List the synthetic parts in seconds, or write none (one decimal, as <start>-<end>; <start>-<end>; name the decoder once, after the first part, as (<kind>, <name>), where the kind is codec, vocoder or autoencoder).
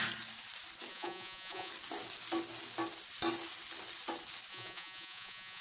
0.9-1.7 (vocoder, Vocos); 4.5-5.6